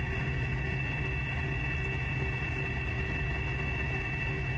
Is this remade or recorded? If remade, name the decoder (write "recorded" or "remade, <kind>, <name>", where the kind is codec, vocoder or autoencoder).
recorded